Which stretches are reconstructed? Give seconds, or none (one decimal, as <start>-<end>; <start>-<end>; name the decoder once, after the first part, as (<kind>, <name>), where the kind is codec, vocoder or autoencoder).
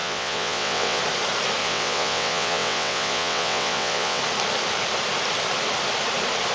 0.0-1.0 (vocoder, WaveNeXt); 1.6-4.2